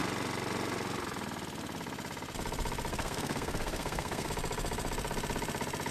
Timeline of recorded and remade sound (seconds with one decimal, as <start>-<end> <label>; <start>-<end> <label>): 0.0-2.9 recorded; 2.9-4.3 remade; 4.3-5.9 recorded